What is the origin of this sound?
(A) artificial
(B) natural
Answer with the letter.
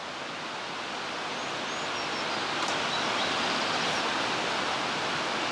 B